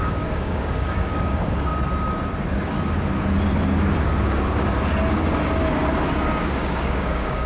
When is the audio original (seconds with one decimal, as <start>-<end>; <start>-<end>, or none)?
1.7-4.0; 4.9-6.4